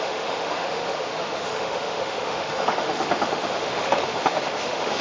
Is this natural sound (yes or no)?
no